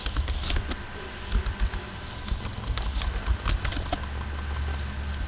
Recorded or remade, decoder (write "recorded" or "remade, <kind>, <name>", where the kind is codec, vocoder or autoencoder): recorded